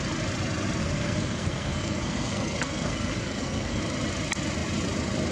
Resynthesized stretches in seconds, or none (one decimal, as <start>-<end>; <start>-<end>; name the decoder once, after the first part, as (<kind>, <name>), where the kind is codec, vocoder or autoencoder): 0.8-3.8 (codec, SNAC)